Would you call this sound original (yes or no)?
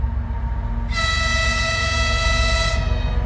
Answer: yes